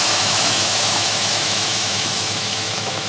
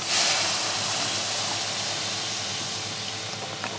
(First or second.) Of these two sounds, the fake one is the first